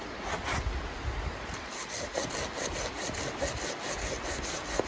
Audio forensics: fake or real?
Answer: real